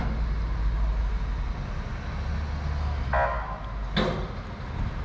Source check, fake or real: real